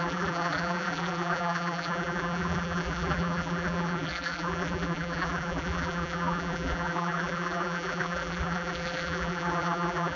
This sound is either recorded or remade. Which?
remade